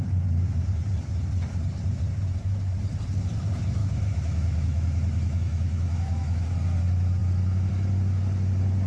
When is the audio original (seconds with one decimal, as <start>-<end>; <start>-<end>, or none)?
0.0-3.8; 6.5-8.9